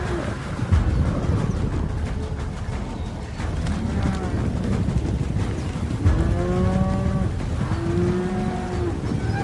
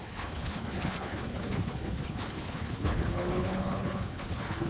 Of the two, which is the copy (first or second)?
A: second